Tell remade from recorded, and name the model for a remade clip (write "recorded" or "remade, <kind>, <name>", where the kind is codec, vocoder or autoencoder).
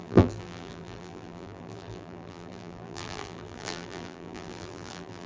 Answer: remade, vocoder, BigVGAN v2